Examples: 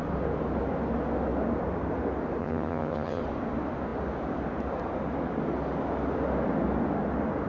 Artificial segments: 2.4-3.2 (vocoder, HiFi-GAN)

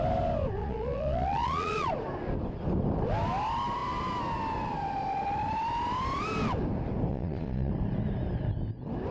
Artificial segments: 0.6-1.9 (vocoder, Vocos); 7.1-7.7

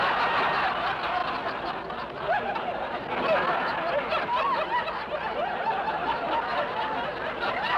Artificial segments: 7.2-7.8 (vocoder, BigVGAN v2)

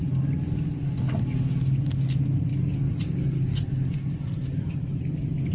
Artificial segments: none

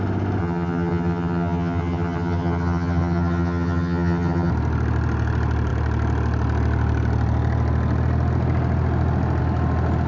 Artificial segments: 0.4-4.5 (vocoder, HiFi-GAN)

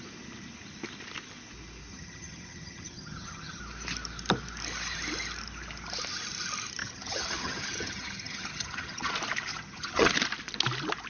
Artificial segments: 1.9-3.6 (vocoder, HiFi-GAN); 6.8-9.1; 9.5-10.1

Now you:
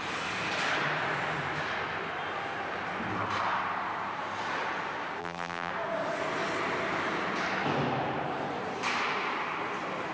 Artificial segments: 5.2-5.7 (vocoder, BigVGAN v2)

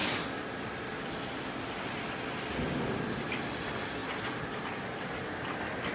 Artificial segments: none